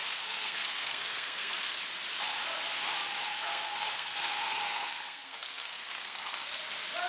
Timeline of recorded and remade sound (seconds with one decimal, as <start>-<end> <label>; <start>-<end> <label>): 0.0-1.8 remade; 1.8-3.3 recorded; 3.3-6.6 remade; 6.6-7.1 recorded